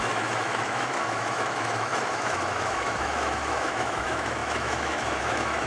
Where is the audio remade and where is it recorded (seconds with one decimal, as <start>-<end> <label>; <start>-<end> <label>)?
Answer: 0.0-5.7 remade